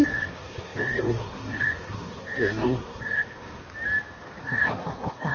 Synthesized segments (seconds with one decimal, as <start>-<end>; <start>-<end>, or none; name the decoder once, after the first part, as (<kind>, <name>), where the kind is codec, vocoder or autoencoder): 0.0-3.6 (codec, SNAC); 4.4-5.3